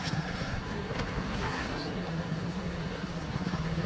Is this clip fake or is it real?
fake